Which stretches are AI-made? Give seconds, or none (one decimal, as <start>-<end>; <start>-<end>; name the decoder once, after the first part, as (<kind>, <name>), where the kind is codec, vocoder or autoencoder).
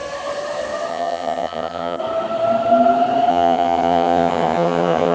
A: 0.9-2.0 (vocoder, HiFi-GAN); 3.3-5.1